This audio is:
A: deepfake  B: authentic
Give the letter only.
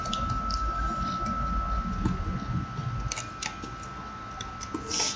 B